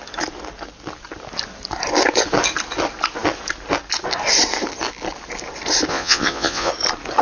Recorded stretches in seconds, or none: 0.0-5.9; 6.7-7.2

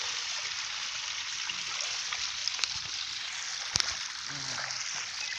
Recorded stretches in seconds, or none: 0.0-5.4

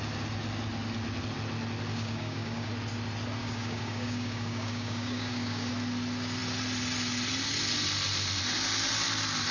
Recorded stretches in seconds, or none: 0.0-1.9; 2.7-3.4; 5.7-9.5

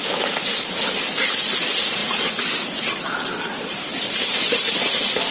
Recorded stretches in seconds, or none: 0.0-5.3

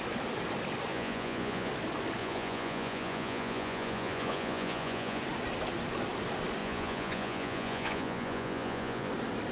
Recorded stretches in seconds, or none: 0.0-0.9; 1.7-2.2; 5.2-6.6; 9.1-9.5

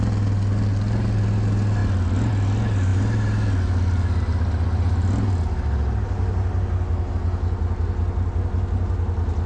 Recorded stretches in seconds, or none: 0.0-9.5